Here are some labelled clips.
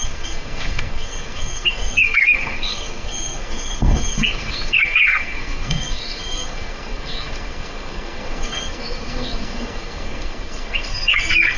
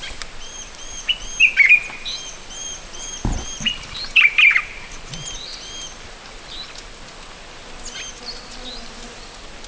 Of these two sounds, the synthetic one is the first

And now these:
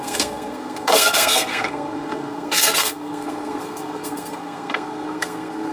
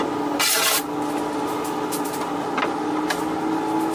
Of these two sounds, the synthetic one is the first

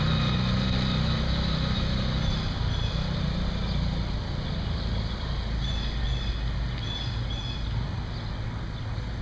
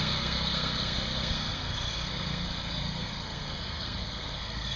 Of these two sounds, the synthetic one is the second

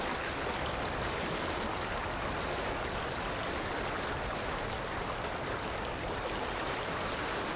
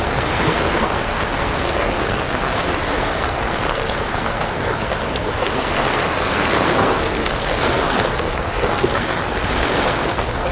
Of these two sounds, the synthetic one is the second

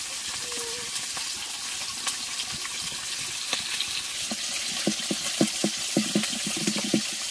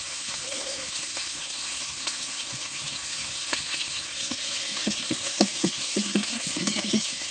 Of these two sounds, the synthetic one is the second